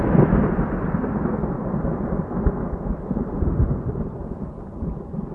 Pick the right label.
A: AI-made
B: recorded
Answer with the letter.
B